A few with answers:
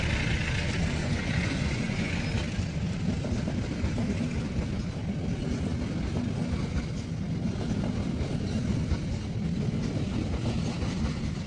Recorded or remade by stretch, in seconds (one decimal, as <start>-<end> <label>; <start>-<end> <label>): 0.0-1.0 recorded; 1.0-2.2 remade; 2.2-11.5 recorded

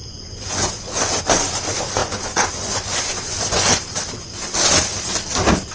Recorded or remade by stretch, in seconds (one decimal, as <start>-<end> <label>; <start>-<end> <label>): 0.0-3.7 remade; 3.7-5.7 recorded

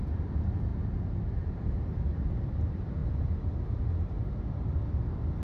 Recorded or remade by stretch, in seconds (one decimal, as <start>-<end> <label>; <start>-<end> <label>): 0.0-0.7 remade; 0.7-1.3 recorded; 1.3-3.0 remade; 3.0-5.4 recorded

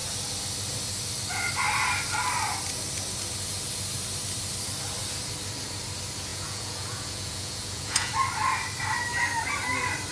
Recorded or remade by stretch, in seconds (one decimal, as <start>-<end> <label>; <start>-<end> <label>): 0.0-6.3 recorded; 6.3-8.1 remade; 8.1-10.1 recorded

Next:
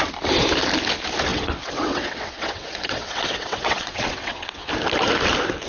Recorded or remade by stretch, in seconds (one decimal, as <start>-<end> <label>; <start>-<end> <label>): 0.0-1.3 recorded; 1.3-4.7 remade; 4.7-5.7 recorded

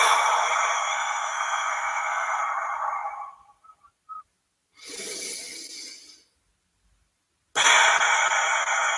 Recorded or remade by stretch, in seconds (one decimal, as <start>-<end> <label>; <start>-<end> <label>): 0.0-0.9 recorded; 0.9-2.4 remade; 2.4-9.0 recorded

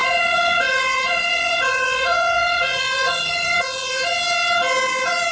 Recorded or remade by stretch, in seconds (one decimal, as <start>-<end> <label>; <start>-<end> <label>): 0.0-4.1 remade; 4.1-5.3 recorded